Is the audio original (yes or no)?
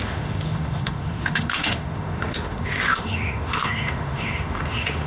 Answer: no